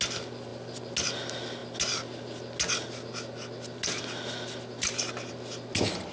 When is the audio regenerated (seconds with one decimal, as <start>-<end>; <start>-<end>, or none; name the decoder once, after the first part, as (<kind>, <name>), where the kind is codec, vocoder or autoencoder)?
none